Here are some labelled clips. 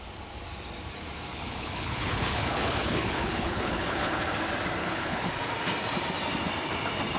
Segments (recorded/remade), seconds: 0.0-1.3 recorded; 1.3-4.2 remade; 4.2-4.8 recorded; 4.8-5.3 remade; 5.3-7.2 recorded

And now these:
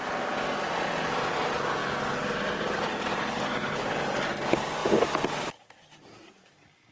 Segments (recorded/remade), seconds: 0.0-6.9 recorded

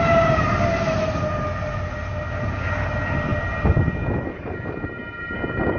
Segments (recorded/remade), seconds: 0.0-5.8 recorded

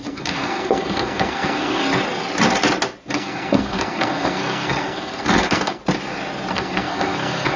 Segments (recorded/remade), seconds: 0.0-1.8 remade; 1.8-3.1 recorded; 3.1-5.8 remade; 5.8-6.5 recorded; 6.5-7.6 remade

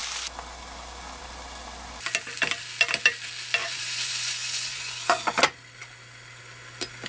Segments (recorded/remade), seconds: 0.0-3.6 recorded; 3.6-5.2 remade; 5.2-7.1 recorded

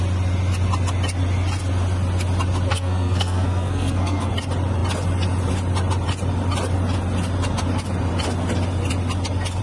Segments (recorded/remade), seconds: 0.0-2.7 recorded; 2.7-4.3 remade; 4.3-9.6 recorded

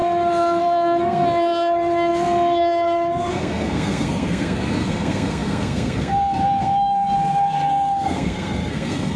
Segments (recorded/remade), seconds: 0.0-9.2 remade